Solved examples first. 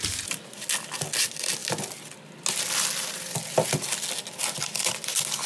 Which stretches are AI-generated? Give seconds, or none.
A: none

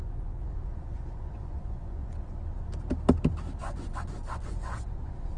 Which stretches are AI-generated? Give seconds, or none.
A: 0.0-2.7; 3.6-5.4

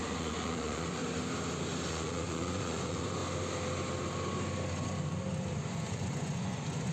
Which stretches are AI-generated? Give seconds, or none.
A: 0.0-1.0; 1.9-3.2; 5.7-6.9

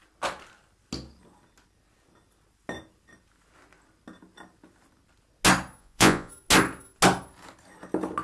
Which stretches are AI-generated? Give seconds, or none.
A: 5.8-6.3

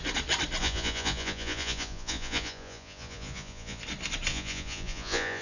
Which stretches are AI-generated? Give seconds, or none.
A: 0.6-3.8; 4.3-5.4

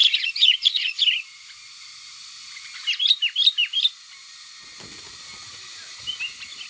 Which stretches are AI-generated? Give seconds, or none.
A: 0.0-1.0

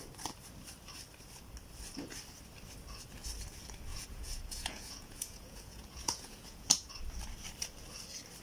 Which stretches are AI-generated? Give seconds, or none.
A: 3.9-6.9

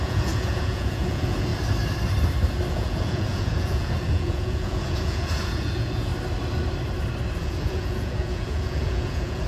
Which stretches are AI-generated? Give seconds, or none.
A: 0.0-1.5; 2.7-6.1; 7.4-9.5